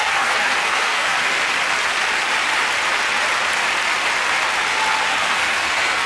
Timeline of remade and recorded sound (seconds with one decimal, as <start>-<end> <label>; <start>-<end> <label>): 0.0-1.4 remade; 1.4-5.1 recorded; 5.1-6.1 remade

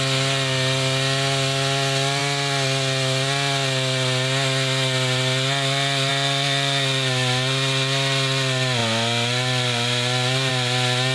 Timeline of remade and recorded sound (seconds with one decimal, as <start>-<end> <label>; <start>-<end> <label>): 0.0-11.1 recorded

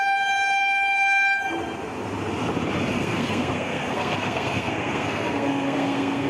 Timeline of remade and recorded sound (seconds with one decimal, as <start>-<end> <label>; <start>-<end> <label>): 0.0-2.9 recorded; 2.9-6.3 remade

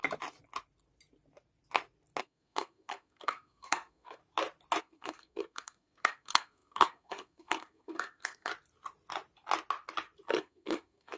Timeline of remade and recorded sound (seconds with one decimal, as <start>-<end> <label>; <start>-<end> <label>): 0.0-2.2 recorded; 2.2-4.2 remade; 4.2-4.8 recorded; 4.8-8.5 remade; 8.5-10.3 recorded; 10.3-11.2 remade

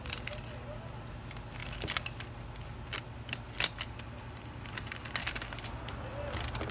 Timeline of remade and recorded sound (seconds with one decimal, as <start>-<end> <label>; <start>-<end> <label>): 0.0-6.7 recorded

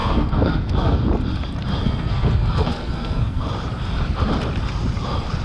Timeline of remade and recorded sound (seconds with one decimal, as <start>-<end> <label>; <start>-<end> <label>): 0.0-1.0 remade; 1.0-1.8 recorded; 1.8-3.5 remade; 3.5-5.4 recorded

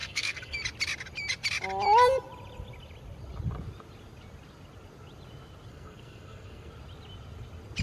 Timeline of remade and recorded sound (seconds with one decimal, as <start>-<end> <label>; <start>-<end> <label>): 0.0-0.6 remade; 0.6-5.7 recorded; 5.7-6.7 remade; 6.7-7.8 recorded

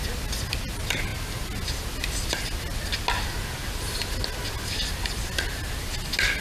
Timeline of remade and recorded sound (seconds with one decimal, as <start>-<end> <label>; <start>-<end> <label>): 0.0-6.4 recorded